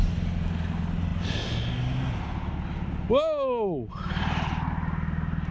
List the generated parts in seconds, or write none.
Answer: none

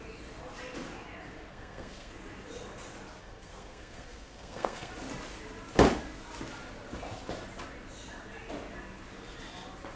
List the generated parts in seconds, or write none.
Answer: 1.5-2.1; 3.2-4.9

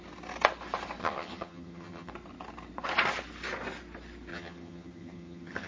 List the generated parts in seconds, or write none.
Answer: 1.0-2.1; 4.3-5.7

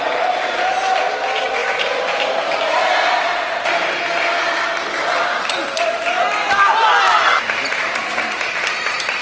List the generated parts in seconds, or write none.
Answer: 1.6-3.3

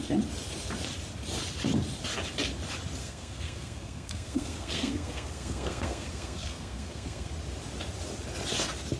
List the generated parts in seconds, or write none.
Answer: 3.0-7.3

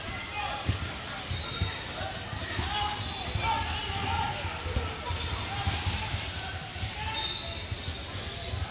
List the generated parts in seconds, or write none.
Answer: 2.4-2.9

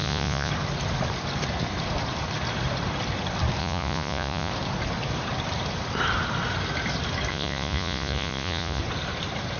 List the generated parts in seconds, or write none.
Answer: 0.0-0.5; 3.6-4.5; 7.3-8.8